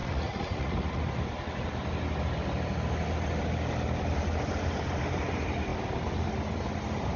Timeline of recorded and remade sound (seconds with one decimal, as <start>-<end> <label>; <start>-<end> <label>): 0.0-1.0 remade; 1.0-7.2 recorded